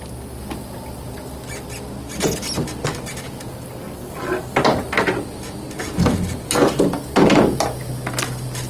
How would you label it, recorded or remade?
recorded